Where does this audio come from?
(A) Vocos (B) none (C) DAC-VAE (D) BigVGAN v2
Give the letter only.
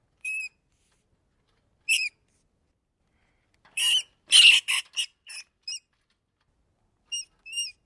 B